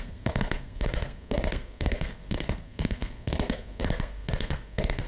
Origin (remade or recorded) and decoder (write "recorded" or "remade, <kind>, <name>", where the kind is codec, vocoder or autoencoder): remade, codec, SNAC